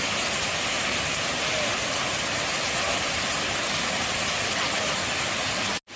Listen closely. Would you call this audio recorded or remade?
recorded